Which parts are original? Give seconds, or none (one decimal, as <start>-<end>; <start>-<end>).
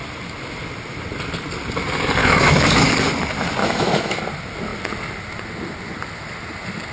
0.0-2.2; 2.9-3.6; 4.2-6.9